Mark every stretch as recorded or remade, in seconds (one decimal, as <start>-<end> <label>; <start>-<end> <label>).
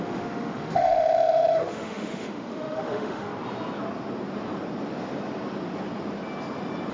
0.0-3.3 remade; 3.3-6.9 recorded